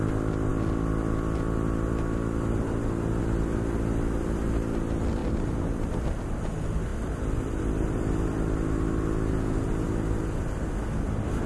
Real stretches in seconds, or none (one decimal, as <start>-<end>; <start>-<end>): 0.0-5.2; 5.9-6.9; 7.6-11.5